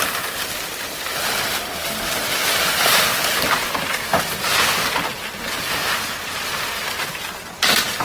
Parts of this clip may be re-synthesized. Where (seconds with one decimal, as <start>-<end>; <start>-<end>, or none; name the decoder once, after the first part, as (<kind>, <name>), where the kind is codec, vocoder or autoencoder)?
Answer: 1.8-6.6 (vocoder, BigVGAN v2)